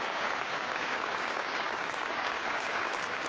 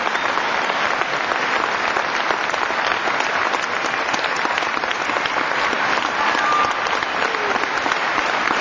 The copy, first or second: first